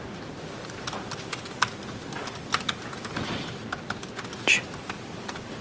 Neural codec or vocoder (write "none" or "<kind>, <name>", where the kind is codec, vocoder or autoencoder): none